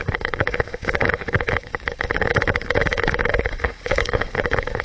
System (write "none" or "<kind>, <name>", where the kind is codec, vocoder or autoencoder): codec, DAC